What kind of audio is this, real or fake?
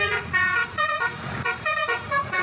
fake